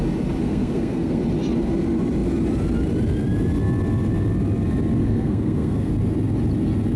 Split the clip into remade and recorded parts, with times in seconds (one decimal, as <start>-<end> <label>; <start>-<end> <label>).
0.0-0.4 recorded; 0.4-1.2 remade; 1.2-5.0 recorded; 5.0-5.9 remade; 5.9-7.0 recorded